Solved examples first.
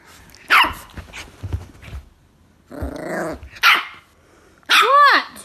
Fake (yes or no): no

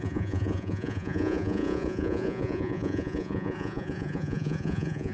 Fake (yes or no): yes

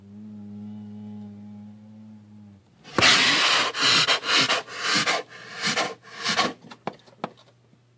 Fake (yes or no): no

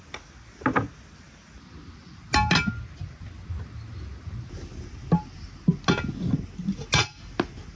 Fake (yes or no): no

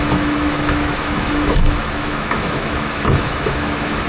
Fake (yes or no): yes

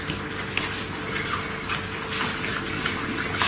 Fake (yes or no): no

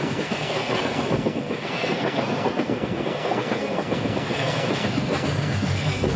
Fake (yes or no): yes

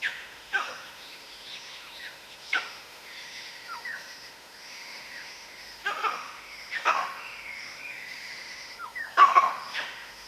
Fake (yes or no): yes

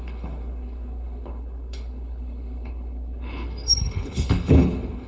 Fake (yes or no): yes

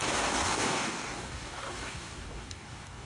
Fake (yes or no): yes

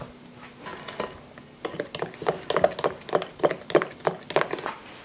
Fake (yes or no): no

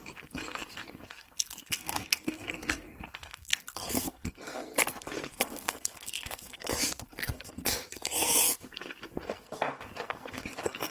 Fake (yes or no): yes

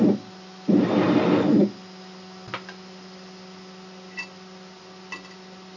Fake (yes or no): no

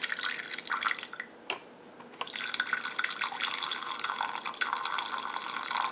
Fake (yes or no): no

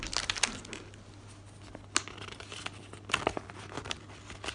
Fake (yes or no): no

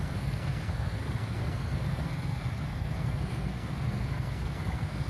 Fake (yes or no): yes